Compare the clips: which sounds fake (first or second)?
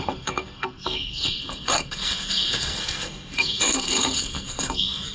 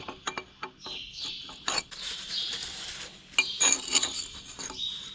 first